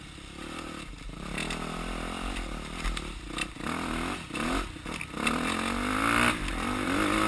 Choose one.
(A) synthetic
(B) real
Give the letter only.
B